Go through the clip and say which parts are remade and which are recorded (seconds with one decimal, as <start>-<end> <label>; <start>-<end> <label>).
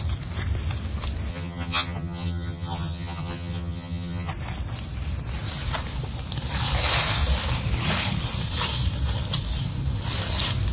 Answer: 0.0-1.3 recorded; 1.3-4.3 remade; 4.3-10.7 recorded